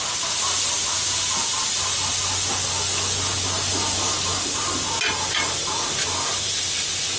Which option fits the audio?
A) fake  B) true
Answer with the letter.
B